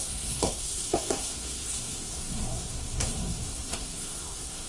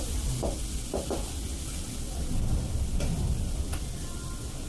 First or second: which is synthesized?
first